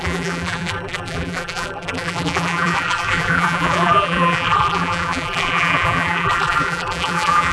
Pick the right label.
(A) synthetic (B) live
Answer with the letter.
A